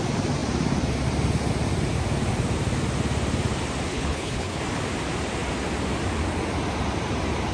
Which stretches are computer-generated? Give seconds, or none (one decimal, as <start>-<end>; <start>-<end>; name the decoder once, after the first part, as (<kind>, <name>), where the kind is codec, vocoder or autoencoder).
3.9-4.6 (codec, HILCodec)